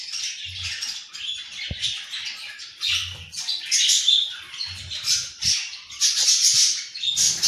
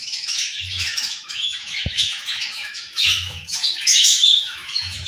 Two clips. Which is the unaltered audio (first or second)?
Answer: first